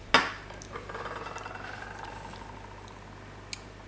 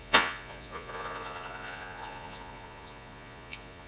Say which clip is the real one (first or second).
first